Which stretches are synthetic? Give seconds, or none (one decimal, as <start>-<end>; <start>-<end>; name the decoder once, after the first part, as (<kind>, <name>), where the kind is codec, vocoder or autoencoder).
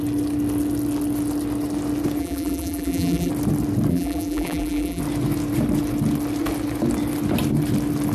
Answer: 2.2-3.3 (vocoder, BigVGAN v2); 3.9-5.0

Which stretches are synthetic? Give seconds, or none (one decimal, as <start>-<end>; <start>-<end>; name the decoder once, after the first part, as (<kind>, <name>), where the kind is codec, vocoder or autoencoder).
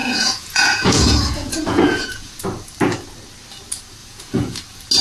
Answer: 0.0-2.4 (vocoder, Vocos); 4.0-4.6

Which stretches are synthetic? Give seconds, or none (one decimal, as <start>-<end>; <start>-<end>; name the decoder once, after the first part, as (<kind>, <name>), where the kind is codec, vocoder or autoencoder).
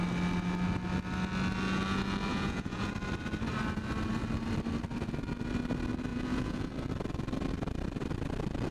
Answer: 2.3-2.9 (vocoder, Vocos); 6.1-6.7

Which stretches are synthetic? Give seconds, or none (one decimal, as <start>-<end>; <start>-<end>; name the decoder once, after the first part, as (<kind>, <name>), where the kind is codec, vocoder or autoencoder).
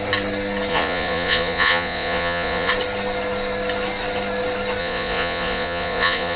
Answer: 0.7-2.7 (vocoder, Vocos); 4.8-6.4